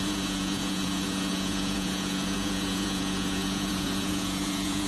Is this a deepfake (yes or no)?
yes